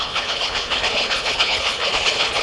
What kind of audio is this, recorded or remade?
remade